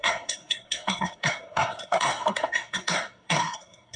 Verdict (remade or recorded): remade